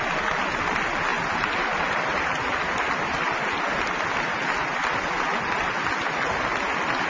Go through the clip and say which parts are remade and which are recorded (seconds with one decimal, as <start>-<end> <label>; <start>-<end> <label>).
0.0-7.1 recorded